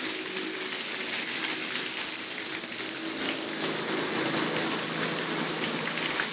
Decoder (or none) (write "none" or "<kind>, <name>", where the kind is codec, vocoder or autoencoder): none